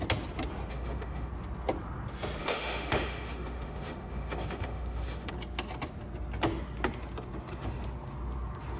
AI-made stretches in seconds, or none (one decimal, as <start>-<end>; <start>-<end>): 0.7-1.3; 2.4-5.3